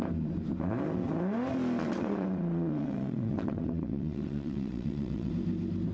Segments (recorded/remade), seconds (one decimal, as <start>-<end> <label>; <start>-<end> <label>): 0.0-1.8 recorded; 1.8-5.3 remade; 5.3-5.9 recorded